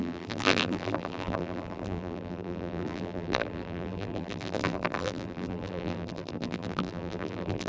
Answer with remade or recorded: remade